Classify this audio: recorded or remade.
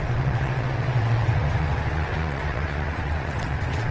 remade